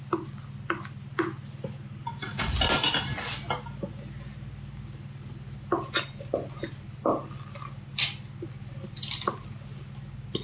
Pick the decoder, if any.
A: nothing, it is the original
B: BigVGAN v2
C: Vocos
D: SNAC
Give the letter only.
A